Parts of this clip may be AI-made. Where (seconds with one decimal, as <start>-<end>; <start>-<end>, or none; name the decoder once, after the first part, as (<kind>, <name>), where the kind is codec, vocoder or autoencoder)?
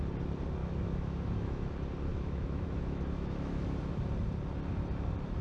0.6-1.7 (autoencoder, DAC-VAE); 2.1-3.8